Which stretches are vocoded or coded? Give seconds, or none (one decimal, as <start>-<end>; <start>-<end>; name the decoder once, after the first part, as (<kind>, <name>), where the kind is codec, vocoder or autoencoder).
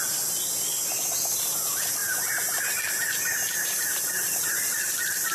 none